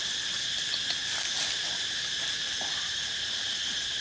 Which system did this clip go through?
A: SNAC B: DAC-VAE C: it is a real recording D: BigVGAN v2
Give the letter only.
C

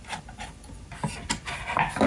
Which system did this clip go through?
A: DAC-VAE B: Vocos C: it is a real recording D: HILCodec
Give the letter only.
C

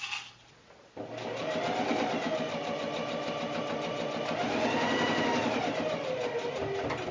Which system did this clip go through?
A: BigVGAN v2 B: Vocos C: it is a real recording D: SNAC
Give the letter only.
C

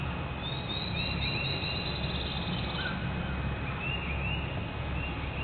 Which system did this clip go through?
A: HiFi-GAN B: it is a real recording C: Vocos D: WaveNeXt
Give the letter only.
B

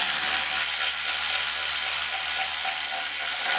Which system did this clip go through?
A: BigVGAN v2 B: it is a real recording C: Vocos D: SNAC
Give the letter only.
B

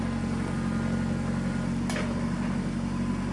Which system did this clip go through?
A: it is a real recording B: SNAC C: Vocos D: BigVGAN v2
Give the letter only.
A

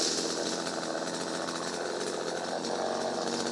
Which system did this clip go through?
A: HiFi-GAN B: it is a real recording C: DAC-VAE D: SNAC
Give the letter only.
B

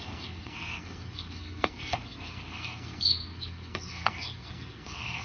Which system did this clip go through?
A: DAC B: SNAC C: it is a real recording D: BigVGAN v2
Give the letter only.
B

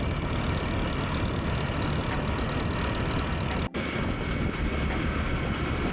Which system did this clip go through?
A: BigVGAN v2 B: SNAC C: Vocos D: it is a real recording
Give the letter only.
D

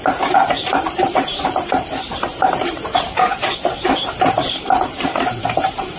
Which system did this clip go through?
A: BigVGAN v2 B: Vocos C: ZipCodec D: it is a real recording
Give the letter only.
A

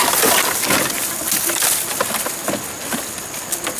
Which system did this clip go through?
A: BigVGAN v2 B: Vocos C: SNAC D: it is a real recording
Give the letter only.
D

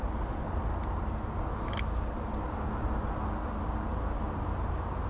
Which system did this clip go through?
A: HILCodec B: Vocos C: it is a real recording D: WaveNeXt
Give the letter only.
C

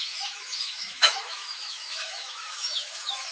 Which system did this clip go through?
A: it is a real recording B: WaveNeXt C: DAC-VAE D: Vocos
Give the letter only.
C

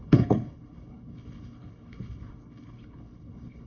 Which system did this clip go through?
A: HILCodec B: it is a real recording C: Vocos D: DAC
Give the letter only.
A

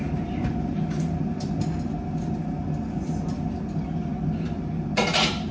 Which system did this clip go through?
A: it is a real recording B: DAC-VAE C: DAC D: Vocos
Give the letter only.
A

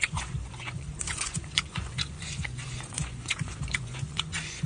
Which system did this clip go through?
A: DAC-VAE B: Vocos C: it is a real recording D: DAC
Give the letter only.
B